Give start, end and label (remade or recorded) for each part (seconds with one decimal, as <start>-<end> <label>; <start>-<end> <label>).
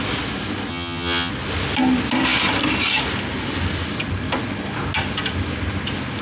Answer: 0.0-0.7 recorded; 0.7-1.3 remade; 1.3-6.2 recorded